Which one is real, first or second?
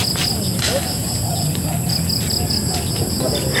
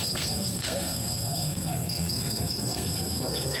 first